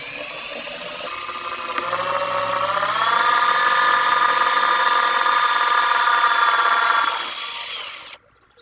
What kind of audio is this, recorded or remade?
recorded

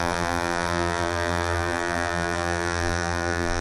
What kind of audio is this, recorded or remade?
remade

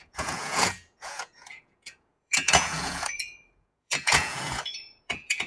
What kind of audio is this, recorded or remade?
remade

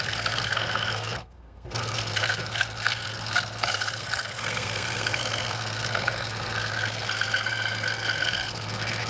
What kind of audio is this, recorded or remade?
remade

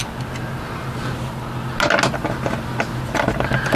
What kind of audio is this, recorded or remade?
recorded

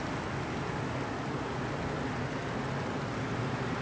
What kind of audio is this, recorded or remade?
recorded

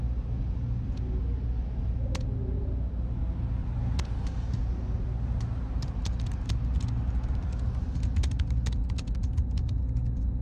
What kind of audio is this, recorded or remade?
recorded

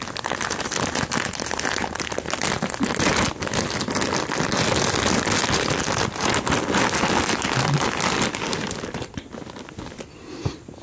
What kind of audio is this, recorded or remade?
recorded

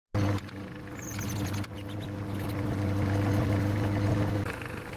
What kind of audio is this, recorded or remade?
recorded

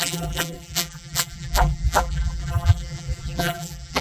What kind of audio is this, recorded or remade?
remade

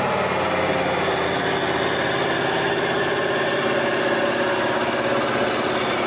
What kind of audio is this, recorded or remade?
recorded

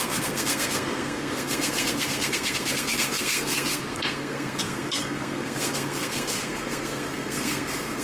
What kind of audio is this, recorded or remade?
remade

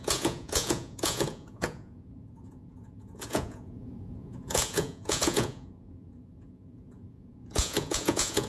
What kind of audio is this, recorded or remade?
remade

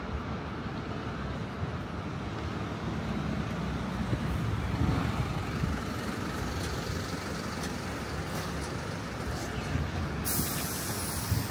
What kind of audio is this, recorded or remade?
recorded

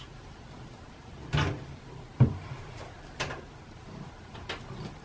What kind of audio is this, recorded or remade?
recorded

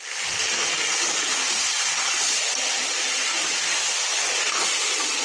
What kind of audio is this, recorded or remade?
recorded